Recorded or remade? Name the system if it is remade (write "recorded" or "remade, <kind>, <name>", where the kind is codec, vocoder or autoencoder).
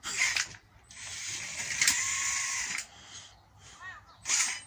recorded